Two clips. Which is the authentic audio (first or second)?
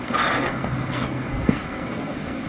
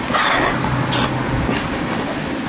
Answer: second